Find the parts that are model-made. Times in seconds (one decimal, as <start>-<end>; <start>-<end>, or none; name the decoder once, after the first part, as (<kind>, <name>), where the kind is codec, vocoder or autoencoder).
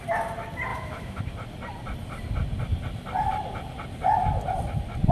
0.7-1.2 (autoencoder, DAC-VAE)